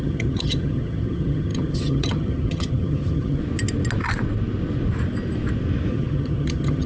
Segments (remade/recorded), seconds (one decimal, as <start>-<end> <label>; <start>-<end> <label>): 0.0-3.4 remade; 3.4-5.9 recorded; 5.9-6.9 remade